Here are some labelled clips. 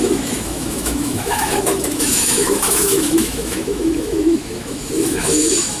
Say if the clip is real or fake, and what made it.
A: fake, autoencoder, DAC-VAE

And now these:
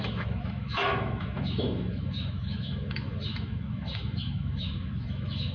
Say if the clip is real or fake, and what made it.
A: fake, autoencoder, DAC-VAE